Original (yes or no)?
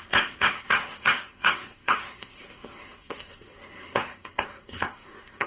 no